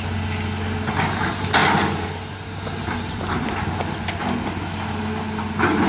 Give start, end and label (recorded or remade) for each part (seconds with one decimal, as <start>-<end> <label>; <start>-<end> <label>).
0.0-5.9 recorded